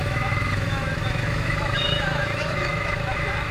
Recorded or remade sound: remade